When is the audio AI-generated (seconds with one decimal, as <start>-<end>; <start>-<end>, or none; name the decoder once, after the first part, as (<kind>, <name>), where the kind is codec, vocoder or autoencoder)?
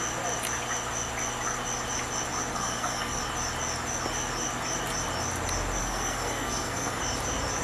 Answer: 2.5-3.2 (codec, SNAC); 5.8-7.0